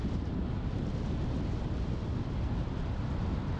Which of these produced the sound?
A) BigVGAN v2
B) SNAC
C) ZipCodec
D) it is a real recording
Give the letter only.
D